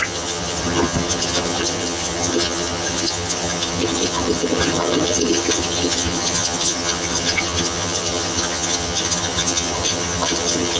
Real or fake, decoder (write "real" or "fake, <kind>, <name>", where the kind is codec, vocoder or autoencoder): fake, vocoder, HiFi-GAN